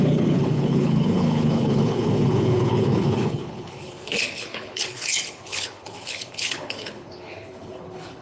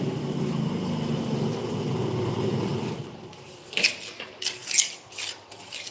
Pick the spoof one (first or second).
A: first